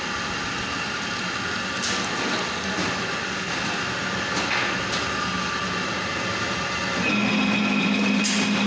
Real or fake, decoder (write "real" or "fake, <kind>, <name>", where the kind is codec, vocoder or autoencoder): real